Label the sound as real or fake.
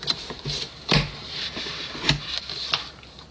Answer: real